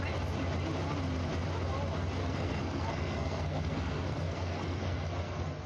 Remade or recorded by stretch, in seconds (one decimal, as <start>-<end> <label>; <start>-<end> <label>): 0.0-2.2 recorded; 2.2-5.7 remade